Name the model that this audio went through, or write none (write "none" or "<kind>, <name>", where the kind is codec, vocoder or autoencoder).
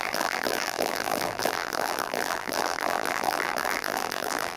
vocoder, BigVGAN v2